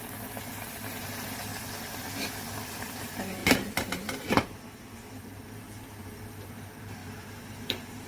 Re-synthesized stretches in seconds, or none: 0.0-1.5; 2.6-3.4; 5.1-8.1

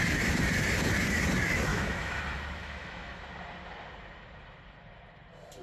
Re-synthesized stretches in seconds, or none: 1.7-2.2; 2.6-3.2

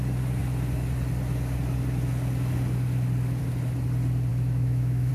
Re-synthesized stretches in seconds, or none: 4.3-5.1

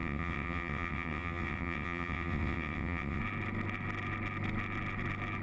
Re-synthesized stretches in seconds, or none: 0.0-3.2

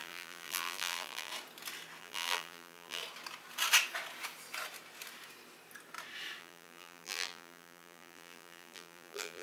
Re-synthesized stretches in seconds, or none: 0.0-1.3; 2.0-3.0; 6.4-9.4

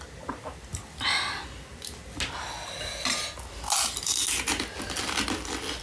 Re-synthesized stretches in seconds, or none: none

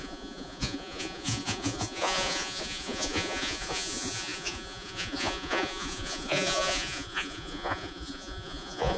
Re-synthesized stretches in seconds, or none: 0.0-9.0